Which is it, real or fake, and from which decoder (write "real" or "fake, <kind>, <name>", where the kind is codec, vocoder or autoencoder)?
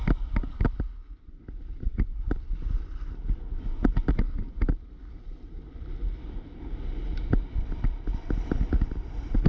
real